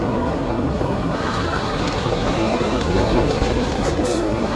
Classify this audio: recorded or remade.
remade